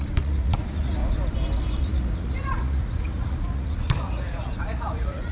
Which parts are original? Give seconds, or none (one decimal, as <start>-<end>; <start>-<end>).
1.0-1.8